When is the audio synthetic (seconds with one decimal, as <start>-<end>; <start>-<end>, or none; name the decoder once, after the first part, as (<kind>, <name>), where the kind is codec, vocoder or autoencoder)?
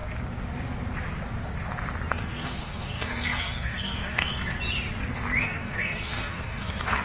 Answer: 2.1-4.3 (codec, SNAC); 5.4-7.0